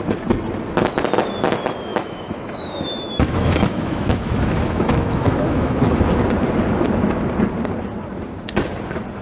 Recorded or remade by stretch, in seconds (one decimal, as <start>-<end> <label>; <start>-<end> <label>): 0.0-1.9 recorded; 1.9-6.0 remade; 6.0-9.2 recorded